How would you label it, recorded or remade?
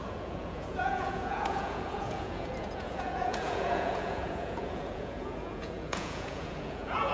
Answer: remade